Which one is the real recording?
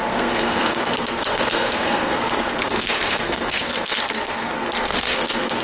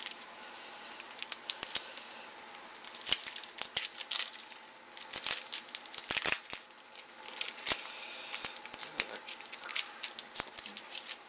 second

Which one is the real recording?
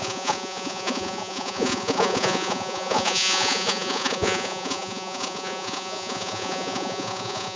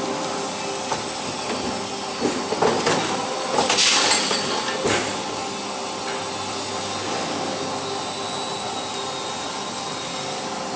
second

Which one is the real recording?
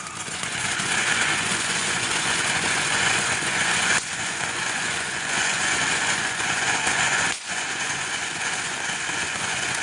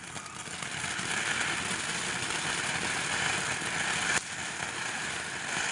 second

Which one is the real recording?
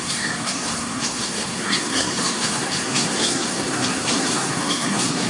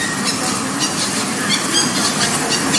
second